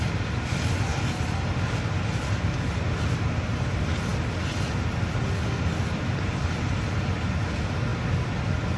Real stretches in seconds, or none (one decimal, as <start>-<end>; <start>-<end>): 0.0-8.8